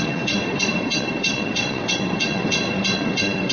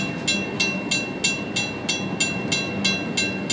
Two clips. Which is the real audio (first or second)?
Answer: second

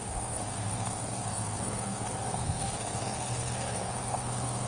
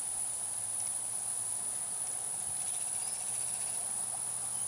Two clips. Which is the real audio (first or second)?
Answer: second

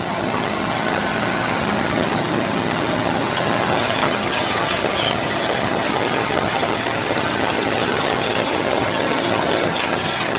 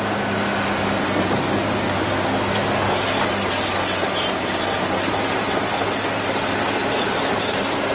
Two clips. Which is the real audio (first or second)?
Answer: second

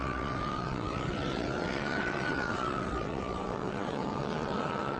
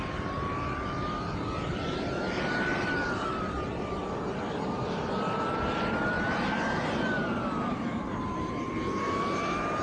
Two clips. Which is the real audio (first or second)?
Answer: second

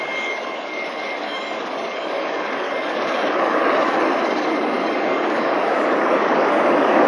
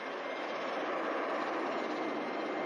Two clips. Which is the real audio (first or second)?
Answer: second